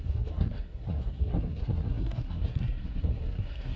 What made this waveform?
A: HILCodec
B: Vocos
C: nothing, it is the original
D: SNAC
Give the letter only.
D